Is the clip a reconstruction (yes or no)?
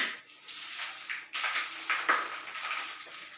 no